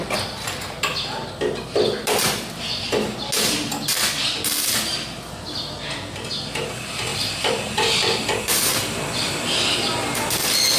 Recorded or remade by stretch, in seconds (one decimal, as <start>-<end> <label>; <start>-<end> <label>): 0.0-7.1 recorded; 7.1-8.4 remade; 8.4-10.8 recorded